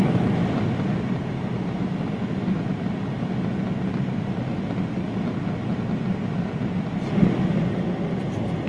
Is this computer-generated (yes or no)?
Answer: no